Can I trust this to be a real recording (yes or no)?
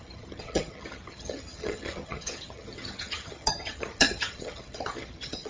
no